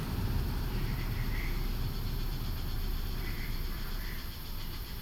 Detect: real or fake fake